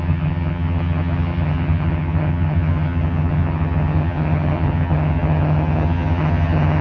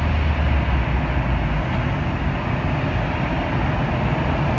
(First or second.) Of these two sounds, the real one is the second